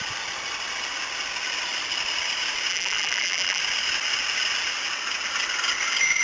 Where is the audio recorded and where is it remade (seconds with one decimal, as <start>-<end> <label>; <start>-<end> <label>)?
0.0-2.7 recorded; 2.7-3.6 remade; 3.6-6.2 recorded